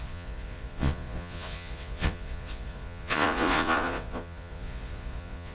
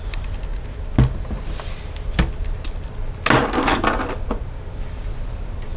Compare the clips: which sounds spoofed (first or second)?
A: first